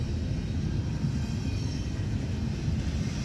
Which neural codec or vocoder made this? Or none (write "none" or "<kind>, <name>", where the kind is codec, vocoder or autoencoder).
none